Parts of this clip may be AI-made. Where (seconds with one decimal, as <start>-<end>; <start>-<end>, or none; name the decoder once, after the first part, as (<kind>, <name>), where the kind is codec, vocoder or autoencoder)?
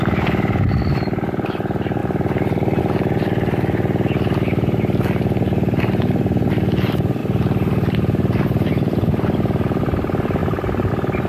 2.0-2.8 (vocoder, BigVGAN v2); 10.4-10.9